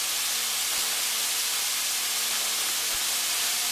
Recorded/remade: recorded